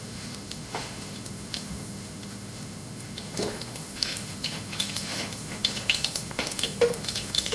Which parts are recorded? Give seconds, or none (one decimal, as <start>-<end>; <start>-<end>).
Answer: none

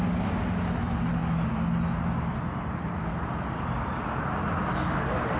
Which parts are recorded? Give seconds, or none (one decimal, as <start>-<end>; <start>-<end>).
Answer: 0.0-5.4

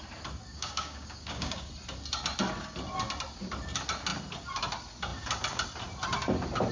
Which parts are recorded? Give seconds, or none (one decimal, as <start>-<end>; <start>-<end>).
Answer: 0.0-0.5; 1.7-6.7

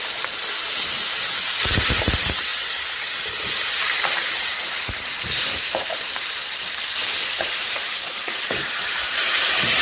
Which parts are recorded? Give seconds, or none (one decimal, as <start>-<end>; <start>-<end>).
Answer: 2.5-3.2; 6.4-7.3

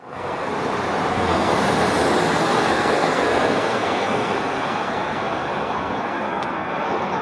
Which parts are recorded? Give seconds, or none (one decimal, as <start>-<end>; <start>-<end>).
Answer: 0.5-1.1; 1.5-2.3

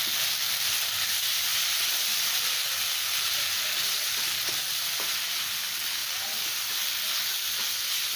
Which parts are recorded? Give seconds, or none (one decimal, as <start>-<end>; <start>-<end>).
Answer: 0.0-1.5; 2.6-8.2

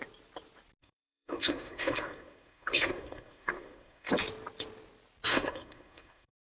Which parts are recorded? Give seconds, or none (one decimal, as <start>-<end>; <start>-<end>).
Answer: 0.0-0.8; 4.1-5.3